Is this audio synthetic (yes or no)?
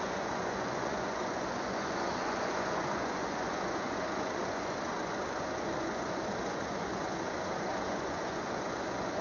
yes